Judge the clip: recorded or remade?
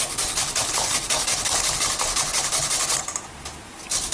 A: recorded